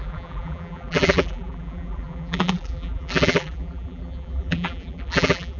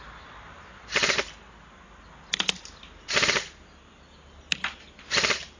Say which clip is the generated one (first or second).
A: first